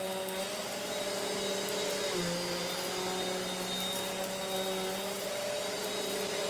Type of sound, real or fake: real